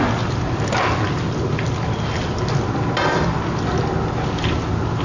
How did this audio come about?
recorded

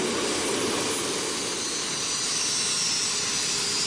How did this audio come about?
recorded